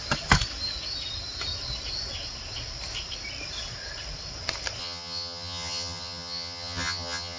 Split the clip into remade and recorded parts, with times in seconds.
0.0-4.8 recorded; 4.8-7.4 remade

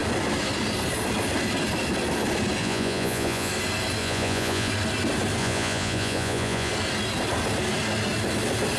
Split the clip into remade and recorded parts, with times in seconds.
0.0-2.6 recorded; 2.6-3.5 remade; 3.5-4.0 recorded; 4.0-4.7 remade; 4.7-5.4 recorded; 5.4-6.7 remade; 6.7-8.8 recorded

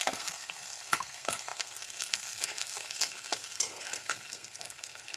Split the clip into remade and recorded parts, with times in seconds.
0.0-5.2 remade

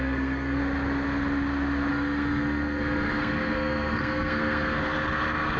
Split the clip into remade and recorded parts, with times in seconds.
0.0-0.6 remade; 0.6-1.9 recorded; 1.9-4.8 remade; 4.8-5.6 recorded

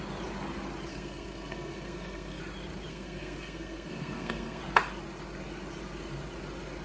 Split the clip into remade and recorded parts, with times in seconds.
0.0-0.9 recorded; 0.9-2.4 remade; 2.4-2.9 recorded; 2.9-4.6 remade; 4.6-6.8 recorded